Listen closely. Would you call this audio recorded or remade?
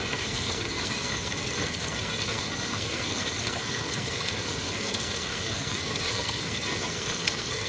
remade